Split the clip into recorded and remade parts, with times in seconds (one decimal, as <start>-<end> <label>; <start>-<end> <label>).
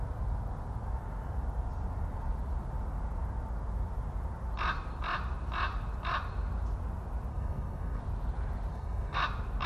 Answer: 0.0-7.3 recorded; 7.3-8.0 remade; 8.0-8.7 recorded; 8.7-9.2 remade; 9.2-9.7 recorded